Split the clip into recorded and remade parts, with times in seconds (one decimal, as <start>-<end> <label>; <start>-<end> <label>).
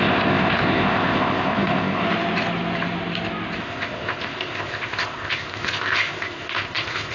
0.0-2.0 remade; 2.0-3.6 recorded; 3.6-7.1 remade